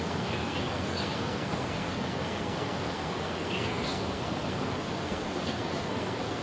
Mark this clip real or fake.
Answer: fake